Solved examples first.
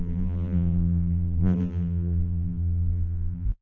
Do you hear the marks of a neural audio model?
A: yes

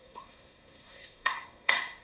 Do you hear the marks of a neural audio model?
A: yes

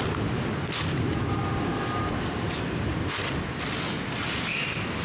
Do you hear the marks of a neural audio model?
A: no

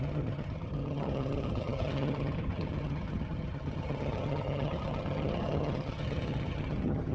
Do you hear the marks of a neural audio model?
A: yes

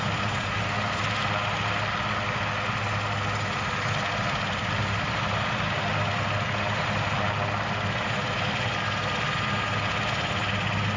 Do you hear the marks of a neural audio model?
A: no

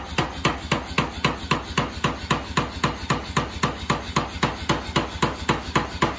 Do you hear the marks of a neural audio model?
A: no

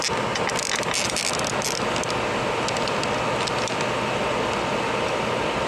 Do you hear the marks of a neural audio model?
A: no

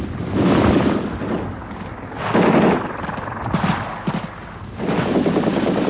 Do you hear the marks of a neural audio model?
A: no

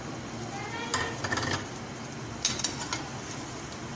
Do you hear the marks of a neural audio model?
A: no